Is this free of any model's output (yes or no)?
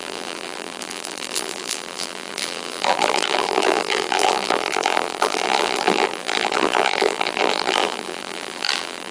no